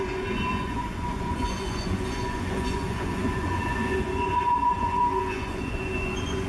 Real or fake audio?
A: fake